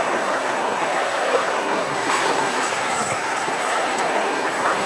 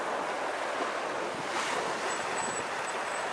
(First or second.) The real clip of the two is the second